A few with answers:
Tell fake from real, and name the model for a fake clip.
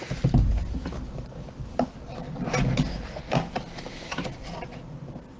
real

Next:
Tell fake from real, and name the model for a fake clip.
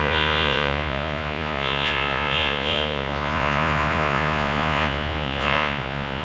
fake, vocoder, Vocos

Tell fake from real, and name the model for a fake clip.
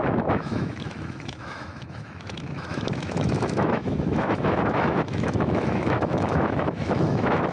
fake, autoencoder, DAC-VAE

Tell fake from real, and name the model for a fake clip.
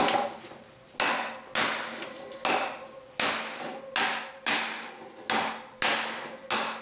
real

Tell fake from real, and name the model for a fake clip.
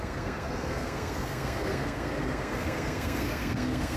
fake, codec, SNAC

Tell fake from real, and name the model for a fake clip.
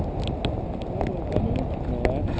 real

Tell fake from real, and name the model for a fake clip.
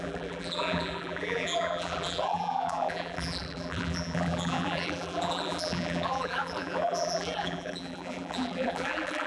fake, vocoder, BigVGAN v2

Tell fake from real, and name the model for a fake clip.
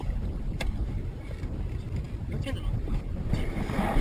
real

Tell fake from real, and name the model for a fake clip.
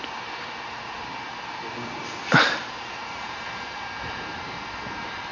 fake, vocoder, BigVGAN v2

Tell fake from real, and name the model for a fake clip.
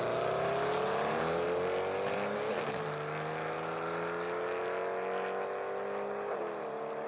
real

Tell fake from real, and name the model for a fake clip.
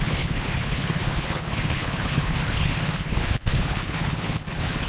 fake, codec, HILCodec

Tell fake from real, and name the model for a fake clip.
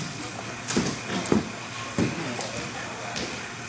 real